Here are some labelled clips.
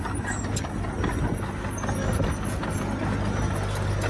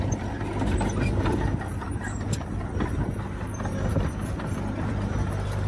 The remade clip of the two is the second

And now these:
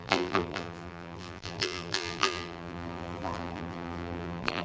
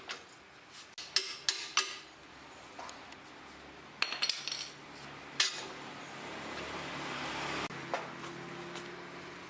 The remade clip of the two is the first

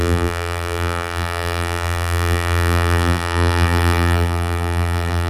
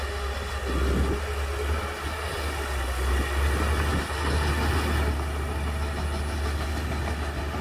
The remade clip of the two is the first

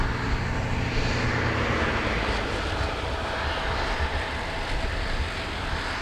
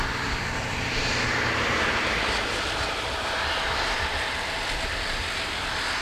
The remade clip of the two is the second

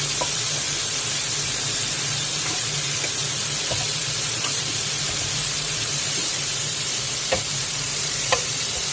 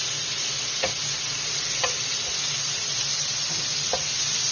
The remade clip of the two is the first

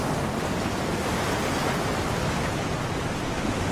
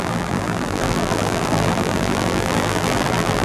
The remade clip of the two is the second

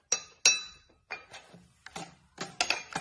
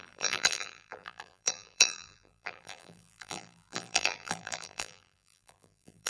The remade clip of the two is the second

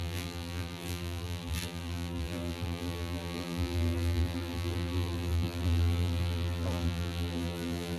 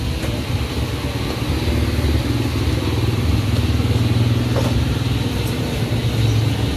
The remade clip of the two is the first